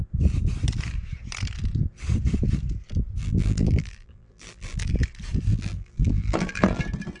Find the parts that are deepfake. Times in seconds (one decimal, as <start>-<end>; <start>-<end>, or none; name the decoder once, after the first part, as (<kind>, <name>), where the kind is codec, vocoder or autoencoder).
3.2-4.9 (vocoder, BigVGAN v2); 5.5-6.8